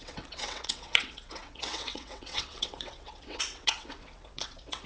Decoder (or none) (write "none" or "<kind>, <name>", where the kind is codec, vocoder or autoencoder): vocoder, WaveNeXt